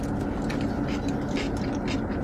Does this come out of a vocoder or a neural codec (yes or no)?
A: no